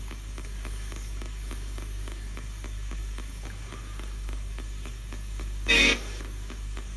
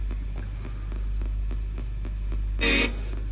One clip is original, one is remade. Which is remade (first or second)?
first